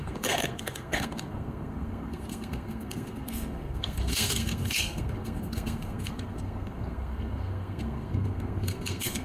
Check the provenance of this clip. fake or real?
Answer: fake